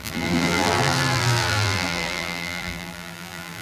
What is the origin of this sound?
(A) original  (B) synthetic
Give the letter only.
B